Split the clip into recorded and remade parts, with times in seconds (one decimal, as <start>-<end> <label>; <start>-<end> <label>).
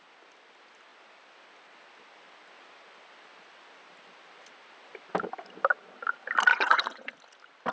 0.0-6.5 recorded; 6.5-7.1 remade; 7.1-7.7 recorded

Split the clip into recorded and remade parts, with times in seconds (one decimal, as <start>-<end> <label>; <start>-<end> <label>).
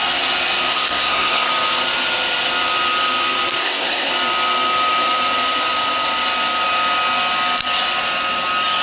0.0-0.7 recorded; 0.7-1.5 remade; 1.5-3.6 recorded; 3.6-4.1 remade; 4.1-8.8 recorded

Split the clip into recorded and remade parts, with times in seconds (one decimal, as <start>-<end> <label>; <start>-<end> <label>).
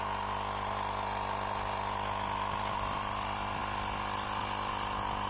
0.0-5.3 recorded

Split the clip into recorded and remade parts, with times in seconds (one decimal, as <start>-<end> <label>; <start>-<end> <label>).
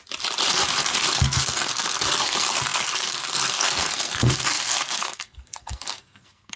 0.0-0.5 recorded; 0.5-6.6 remade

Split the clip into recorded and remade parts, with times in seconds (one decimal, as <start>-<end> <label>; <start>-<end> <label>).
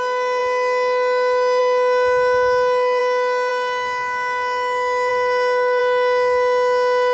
0.0-5.1 recorded; 5.1-5.8 remade; 5.8-7.1 recorded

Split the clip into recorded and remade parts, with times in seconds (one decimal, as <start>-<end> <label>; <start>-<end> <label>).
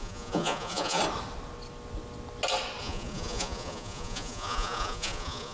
0.0-1.0 remade; 1.0-2.8 recorded; 2.8-5.5 remade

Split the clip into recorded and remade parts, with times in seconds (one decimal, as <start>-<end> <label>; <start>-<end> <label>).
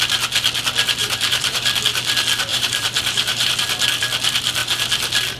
0.0-1.0 recorded; 1.0-1.6 remade; 1.6-2.5 recorded; 2.5-3.5 remade; 3.5-5.4 recorded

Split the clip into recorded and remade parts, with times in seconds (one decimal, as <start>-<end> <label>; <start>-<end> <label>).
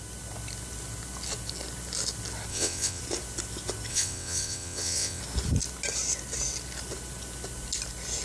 0.0-2.5 recorded; 2.5-3.0 remade; 3.0-3.9 recorded; 3.9-5.2 remade; 5.2-8.2 recorded